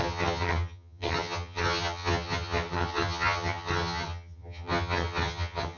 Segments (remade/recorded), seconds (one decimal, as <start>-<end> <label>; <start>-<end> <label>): 0.0-5.8 remade